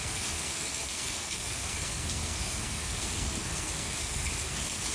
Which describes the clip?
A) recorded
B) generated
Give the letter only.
B